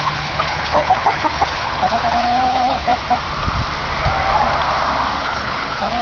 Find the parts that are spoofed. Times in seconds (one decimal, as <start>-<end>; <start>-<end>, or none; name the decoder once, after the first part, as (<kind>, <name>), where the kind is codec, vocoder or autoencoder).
0.0-2.9 (codec, HILCodec); 5.2-6.0